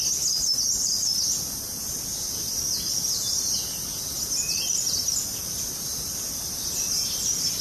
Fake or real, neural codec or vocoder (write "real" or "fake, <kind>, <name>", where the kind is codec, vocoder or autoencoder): real